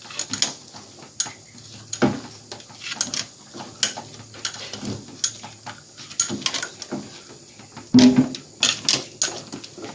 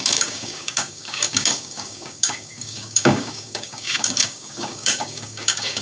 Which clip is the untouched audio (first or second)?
first